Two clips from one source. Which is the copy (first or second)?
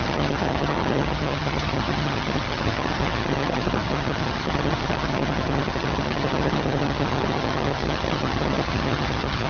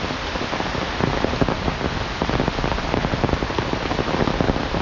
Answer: first